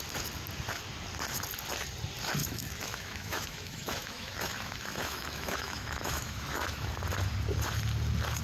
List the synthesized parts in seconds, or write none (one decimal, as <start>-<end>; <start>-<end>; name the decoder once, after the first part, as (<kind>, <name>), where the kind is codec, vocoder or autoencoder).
2.4-6.9 (autoencoder, DAC-VAE)